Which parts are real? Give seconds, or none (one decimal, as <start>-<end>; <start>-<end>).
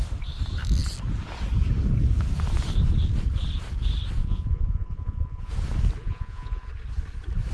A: 0.0-4.2; 5.5-6.0; 6.7-7.5